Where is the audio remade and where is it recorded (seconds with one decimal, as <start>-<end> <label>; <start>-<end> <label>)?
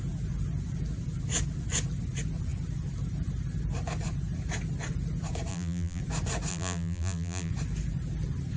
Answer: 0.0-5.5 recorded; 5.5-6.0 remade; 6.0-6.5 recorded; 6.5-7.5 remade; 7.5-8.6 recorded